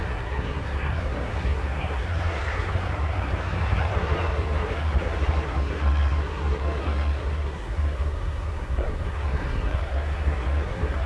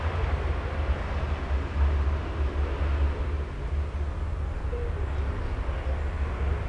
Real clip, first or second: second